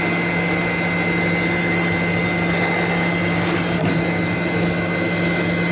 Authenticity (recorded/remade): recorded